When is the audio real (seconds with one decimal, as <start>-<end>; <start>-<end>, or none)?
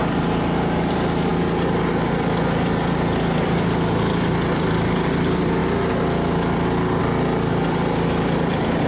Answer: 5.6-7.0